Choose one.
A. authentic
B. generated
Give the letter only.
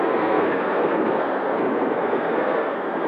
B